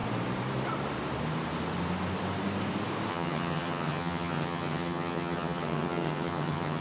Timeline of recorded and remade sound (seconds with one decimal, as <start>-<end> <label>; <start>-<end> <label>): 0.0-3.1 recorded; 3.1-6.8 remade